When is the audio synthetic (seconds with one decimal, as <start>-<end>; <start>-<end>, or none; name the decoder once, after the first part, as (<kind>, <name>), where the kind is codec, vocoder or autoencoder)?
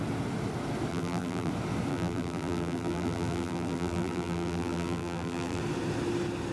0.9-1.5 (vocoder, BigVGAN v2); 1.9-5.6